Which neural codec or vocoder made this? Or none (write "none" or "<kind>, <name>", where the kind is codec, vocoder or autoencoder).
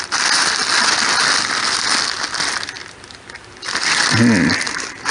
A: none